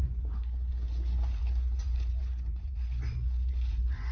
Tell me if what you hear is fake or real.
fake